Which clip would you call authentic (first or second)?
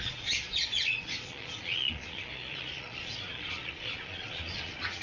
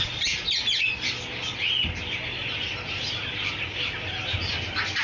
second